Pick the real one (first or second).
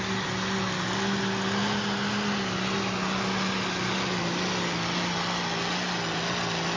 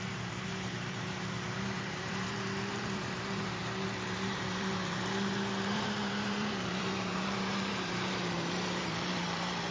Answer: first